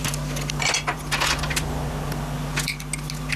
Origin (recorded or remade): recorded